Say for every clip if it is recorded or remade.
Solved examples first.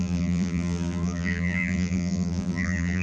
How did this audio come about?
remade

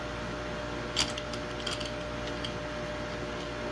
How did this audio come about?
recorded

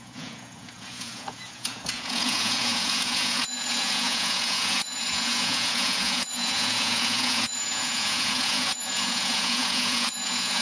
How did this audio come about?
remade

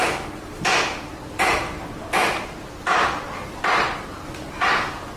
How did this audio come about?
recorded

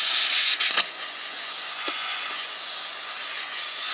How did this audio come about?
remade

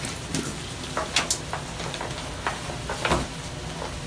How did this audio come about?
recorded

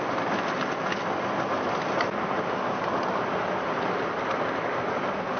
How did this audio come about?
recorded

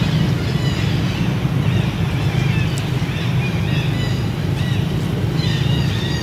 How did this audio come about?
recorded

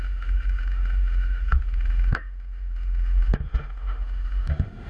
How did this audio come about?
remade